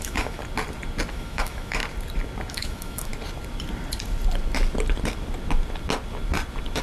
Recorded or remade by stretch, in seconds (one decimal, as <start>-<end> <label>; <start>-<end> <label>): 0.0-0.4 remade; 0.4-1.1 recorded; 1.1-1.8 remade; 1.8-2.5 recorded; 2.5-3.1 remade; 3.1-6.8 recorded

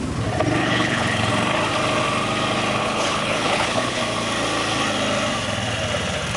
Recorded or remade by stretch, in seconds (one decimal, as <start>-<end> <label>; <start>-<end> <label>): 0.0-0.6 recorded; 0.6-1.3 remade; 1.3-2.8 recorded; 2.8-4.0 remade; 4.0-6.4 recorded

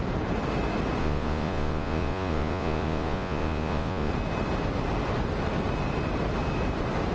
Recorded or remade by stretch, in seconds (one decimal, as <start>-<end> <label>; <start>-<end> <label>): 0.0-1.0 recorded; 1.0-4.1 remade; 4.1-7.1 recorded

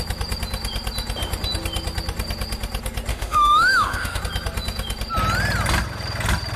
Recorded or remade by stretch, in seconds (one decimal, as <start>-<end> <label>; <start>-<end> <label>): 0.0-3.1 recorded; 3.1-4.2 remade; 4.2-6.6 recorded

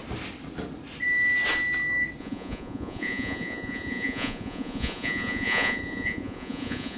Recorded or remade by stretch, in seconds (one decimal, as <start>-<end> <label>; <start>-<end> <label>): 0.0-2.2 recorded; 2.2-7.0 remade

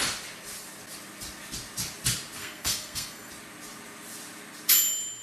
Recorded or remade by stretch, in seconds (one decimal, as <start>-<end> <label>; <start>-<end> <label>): 0.0-2.4 recorded; 2.4-3.3 remade; 3.3-5.2 recorded